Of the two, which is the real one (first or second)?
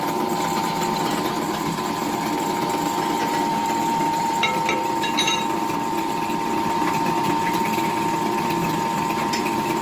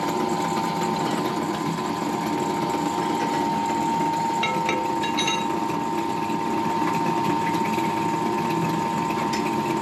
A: second